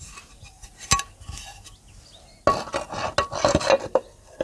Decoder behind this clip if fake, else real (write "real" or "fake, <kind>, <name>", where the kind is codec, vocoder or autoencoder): real